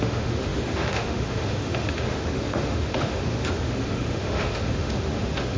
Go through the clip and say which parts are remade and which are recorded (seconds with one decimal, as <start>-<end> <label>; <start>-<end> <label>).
0.0-5.6 remade